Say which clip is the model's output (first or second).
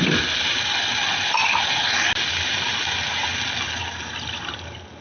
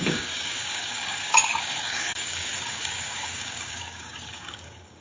second